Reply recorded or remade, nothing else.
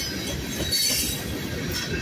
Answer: recorded